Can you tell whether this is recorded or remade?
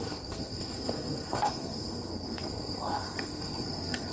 remade